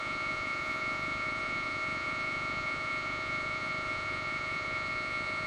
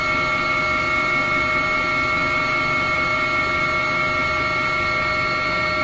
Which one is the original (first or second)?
second